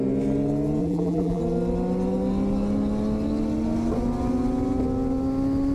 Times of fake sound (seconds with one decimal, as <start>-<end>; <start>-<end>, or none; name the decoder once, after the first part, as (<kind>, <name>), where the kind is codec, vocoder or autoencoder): 0.8-1.4 (vocoder, BigVGAN v2)